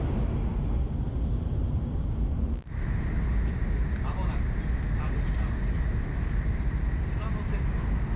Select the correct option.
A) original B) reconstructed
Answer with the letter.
A